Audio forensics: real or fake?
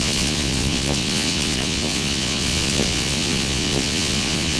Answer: fake